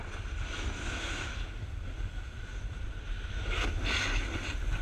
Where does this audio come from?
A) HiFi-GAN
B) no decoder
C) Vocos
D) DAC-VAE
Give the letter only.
B